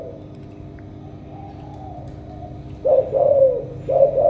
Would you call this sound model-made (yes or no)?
no